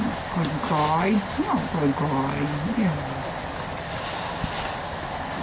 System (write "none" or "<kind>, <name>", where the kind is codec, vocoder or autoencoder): none